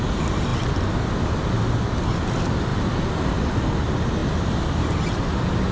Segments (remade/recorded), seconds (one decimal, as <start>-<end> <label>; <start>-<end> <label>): 0.0-2.7 recorded; 2.7-3.4 remade; 3.4-5.7 recorded